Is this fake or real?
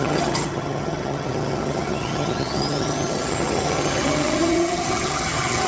fake